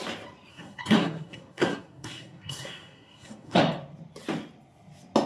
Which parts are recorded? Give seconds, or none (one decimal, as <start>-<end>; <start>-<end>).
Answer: 0.0-0.5; 3.6-5.3